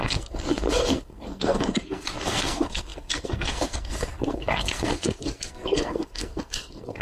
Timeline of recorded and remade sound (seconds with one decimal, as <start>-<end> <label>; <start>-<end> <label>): 0.0-7.0 remade